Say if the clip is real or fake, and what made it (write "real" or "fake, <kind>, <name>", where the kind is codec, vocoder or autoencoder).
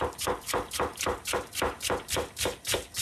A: fake, vocoder, BigVGAN v2